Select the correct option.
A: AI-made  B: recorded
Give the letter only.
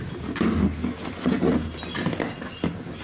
B